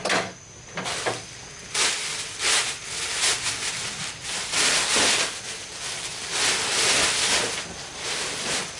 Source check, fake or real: real